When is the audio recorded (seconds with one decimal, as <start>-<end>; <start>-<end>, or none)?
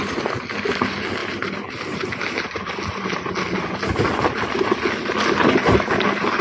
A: 0.0-6.4